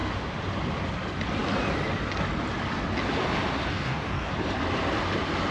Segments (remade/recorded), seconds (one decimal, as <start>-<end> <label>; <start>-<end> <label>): 0.0-3.7 recorded; 3.7-4.3 remade; 4.3-5.5 recorded